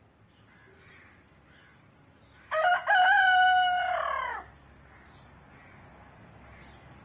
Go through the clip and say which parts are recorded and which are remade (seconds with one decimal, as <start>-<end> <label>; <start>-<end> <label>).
0.0-7.0 recorded